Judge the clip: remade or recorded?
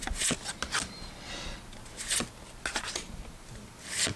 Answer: recorded